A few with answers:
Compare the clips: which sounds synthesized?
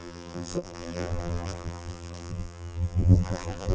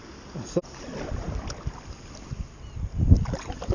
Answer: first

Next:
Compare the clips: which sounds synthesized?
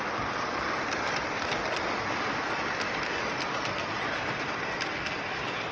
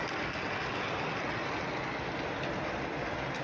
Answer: first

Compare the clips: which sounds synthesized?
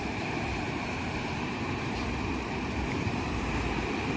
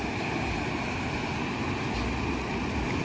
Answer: first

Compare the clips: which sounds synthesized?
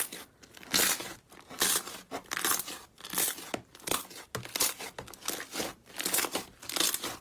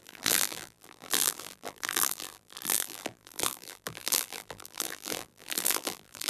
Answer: second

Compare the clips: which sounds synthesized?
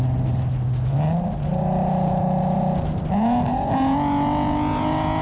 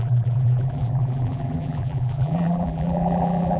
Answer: second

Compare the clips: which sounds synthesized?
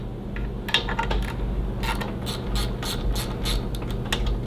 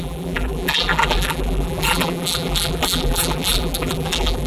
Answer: second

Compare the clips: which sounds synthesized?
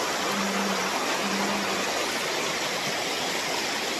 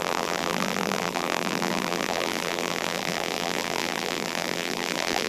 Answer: second